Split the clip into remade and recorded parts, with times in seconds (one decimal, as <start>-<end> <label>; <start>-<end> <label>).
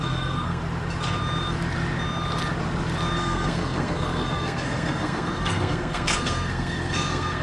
0.0-0.6 remade; 0.6-3.2 recorded; 3.2-7.4 remade